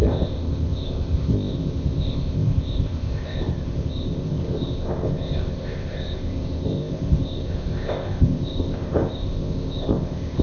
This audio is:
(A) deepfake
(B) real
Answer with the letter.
A